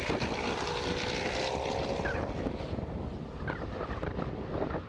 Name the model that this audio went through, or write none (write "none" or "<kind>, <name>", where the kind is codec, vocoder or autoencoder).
none